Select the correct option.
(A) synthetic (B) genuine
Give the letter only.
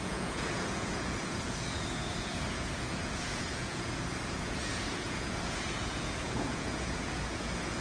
A